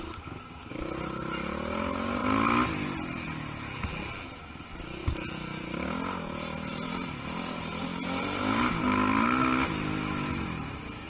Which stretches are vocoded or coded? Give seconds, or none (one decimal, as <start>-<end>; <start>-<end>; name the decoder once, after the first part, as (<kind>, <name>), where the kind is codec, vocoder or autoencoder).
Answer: none